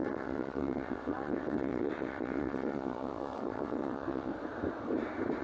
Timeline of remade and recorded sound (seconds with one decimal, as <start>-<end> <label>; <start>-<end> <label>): 0.0-4.3 remade; 4.3-5.4 recorded